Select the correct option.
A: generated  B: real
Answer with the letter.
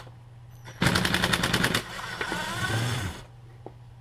B